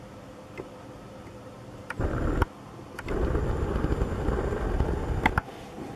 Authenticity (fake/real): real